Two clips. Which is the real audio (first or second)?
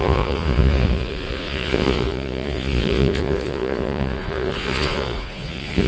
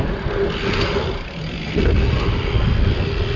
second